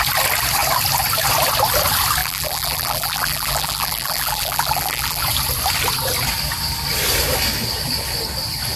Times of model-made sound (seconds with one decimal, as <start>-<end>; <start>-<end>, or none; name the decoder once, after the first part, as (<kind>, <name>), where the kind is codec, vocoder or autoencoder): 2.2-5.2 (vocoder, BigVGAN v2)